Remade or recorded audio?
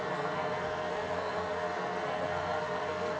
remade